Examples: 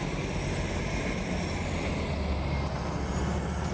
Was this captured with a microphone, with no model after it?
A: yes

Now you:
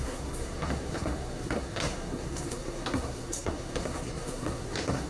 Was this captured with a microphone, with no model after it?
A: no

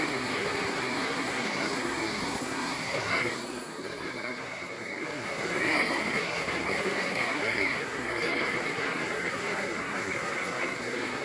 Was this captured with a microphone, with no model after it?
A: no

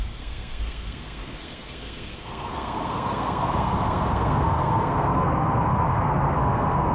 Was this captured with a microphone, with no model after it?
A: no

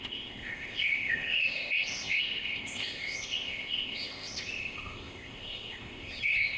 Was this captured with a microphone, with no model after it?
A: no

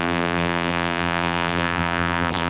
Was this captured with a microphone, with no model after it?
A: no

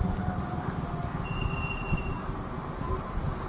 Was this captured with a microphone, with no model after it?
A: yes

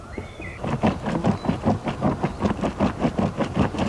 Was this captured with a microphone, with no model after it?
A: yes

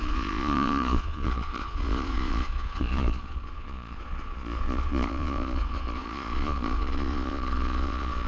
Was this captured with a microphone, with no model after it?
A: no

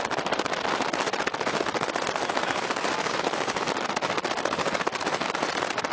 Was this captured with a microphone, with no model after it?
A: yes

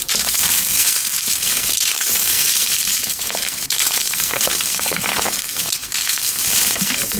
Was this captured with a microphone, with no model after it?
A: no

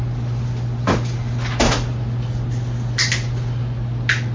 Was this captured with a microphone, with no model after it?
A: yes